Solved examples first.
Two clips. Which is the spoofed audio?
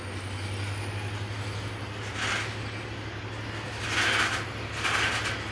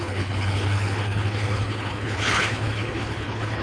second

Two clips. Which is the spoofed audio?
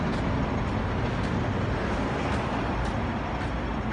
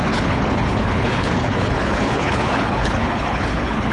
second